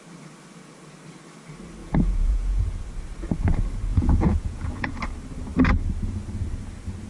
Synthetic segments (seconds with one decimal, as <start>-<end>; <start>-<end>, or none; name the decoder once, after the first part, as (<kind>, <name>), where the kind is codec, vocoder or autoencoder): 1.8-2.8 (vocoder, Vocos); 3.9-5.0